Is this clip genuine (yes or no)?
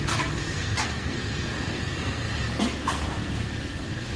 no